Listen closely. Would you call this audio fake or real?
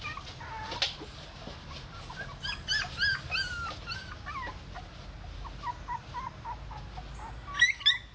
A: real